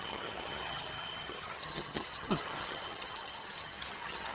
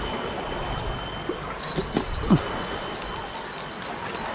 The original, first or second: second